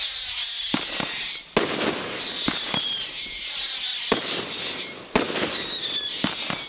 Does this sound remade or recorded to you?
recorded